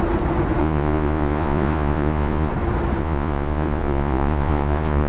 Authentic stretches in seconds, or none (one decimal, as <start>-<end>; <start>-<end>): 0.0-0.6; 2.5-3.0